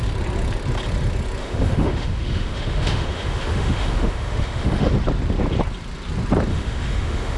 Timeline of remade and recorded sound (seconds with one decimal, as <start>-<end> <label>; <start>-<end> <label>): 0.0-1.4 recorded; 1.4-4.9 remade; 4.9-6.5 recorded; 6.5-7.4 remade